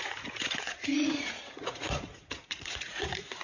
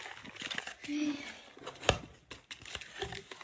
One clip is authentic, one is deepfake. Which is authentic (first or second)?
second